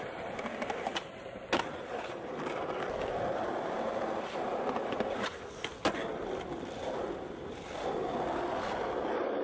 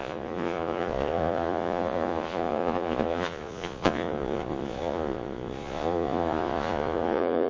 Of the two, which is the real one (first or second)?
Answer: first